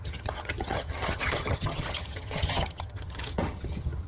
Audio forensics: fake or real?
fake